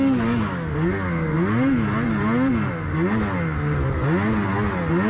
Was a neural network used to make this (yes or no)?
no